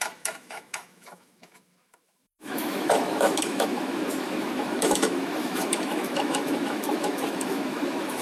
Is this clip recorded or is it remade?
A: remade